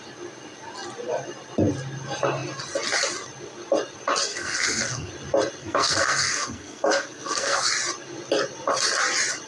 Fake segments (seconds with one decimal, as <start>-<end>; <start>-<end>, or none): 4.3-5.1; 5.6-7.7